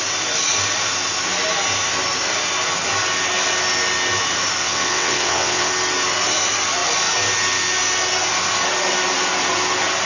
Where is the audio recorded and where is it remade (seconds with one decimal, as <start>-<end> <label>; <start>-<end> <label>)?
0.0-4.6 recorded; 4.6-5.7 remade; 5.7-10.1 recorded